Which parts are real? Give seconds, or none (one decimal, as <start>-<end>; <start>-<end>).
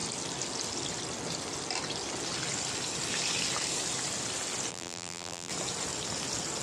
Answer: 0.0-4.7; 5.5-6.6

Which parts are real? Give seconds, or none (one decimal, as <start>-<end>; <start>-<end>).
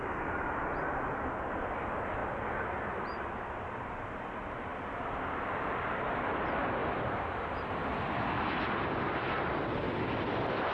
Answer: 0.0-2.2; 2.7-6.8; 8.1-10.7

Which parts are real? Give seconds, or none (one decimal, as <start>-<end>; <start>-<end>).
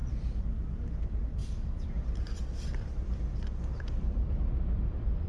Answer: 0.0-1.0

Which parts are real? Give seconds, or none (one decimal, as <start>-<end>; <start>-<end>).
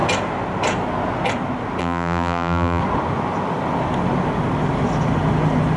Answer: 0.0-1.8; 2.8-5.8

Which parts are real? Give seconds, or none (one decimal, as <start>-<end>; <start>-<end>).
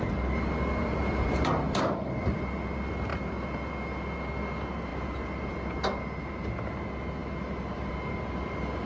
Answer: 0.0-0.8; 2.4-8.9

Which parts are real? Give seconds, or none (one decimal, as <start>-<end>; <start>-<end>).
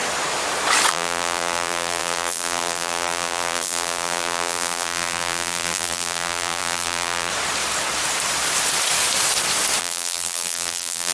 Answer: 0.0-0.9; 7.3-9.8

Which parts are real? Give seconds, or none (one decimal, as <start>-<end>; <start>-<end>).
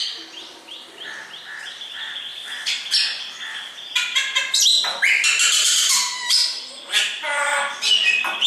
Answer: 0.0-8.5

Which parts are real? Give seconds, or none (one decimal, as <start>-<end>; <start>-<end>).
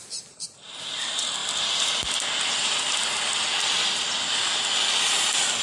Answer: 0.0-5.6